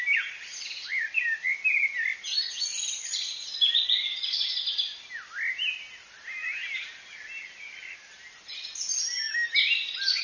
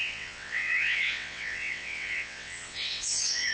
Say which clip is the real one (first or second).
first